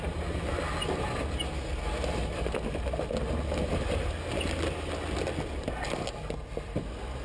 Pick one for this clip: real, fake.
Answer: real